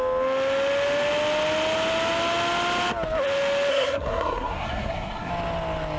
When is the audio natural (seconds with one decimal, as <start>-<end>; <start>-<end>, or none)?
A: 0.0-3.7; 5.3-6.0